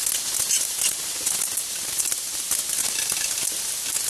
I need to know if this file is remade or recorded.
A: recorded